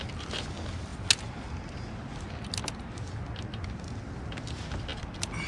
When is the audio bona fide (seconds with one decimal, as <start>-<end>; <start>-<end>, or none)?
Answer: 0.0-5.5